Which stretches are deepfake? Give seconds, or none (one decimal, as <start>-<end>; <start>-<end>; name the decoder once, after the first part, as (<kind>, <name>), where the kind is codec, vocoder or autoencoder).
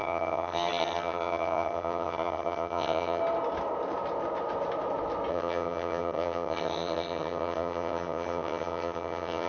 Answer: 0.0-3.2 (vocoder, HiFi-GAN); 5.3-9.5